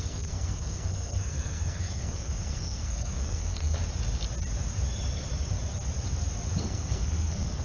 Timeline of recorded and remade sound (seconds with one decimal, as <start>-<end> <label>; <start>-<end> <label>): 0.0-3.8 remade; 3.8-6.6 recorded; 6.6-7.6 remade